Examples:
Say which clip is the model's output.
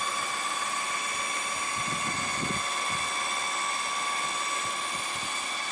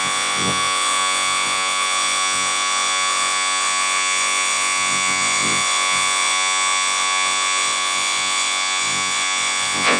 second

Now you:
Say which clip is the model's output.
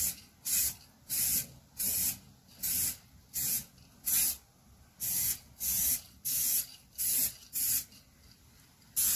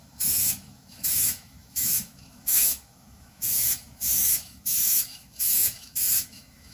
second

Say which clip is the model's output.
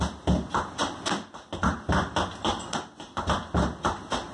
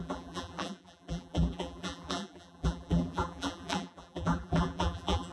second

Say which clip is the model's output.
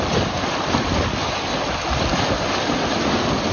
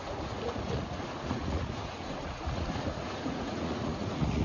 second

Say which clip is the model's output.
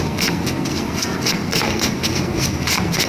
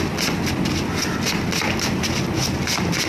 first